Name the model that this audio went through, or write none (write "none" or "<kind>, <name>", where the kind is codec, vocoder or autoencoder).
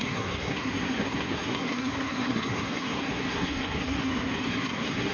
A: codec, SNAC